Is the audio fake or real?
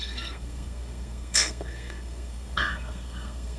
fake